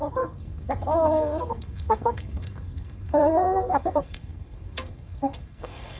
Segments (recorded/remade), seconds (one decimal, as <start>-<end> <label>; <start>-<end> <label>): 0.0-6.0 remade